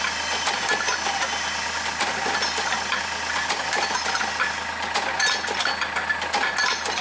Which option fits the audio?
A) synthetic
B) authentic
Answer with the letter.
B